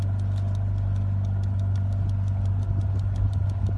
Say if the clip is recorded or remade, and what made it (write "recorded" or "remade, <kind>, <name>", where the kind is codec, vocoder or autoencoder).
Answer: recorded